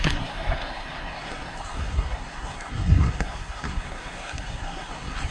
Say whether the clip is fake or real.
fake